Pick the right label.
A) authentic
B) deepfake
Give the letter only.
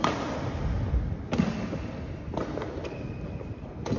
A